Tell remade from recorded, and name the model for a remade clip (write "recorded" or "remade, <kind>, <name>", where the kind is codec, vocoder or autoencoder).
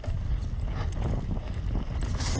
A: recorded